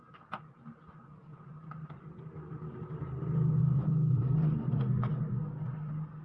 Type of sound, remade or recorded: recorded